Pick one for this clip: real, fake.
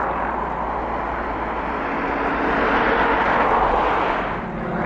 real